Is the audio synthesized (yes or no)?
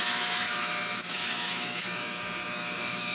yes